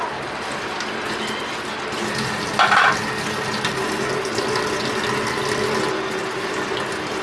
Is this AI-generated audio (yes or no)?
no